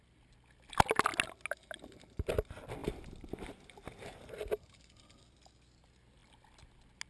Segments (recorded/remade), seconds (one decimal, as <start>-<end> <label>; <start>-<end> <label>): 0.0-7.1 recorded